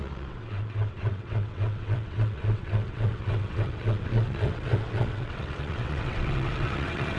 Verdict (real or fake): fake